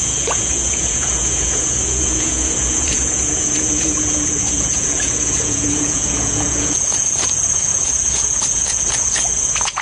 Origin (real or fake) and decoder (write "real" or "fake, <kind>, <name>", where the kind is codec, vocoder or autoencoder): fake, vocoder, Vocos